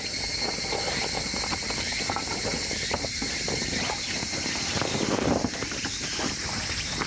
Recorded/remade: recorded